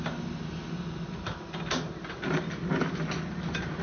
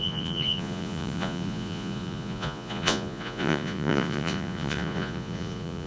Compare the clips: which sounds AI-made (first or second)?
second